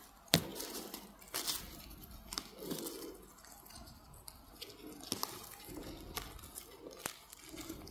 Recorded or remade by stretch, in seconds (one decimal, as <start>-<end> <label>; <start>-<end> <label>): 0.0-0.5 recorded; 0.5-1.2 remade; 1.2-7.9 recorded